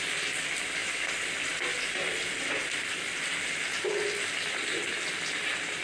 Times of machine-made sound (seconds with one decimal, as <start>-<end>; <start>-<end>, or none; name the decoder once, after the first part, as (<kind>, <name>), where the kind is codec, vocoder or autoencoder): 0.0-0.8 (vocoder, BigVGAN v2); 1.4-3.9